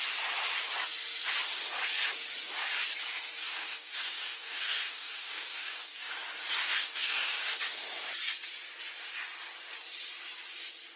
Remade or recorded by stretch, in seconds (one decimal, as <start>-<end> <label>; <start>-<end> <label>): 0.0-3.4 recorded; 3.4-6.1 remade; 6.1-6.6 recorded; 6.6-7.6 remade; 7.6-11.0 recorded